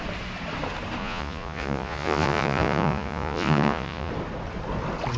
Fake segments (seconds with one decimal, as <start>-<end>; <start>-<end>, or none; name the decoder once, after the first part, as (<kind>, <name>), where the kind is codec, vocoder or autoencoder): 1.0-4.1 (vocoder, Vocos)